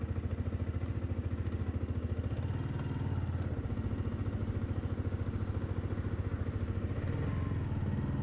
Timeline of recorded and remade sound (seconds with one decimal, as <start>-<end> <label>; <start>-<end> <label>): 0.0-8.2 recorded